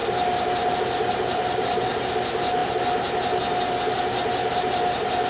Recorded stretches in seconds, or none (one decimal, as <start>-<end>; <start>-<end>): 0.0-5.3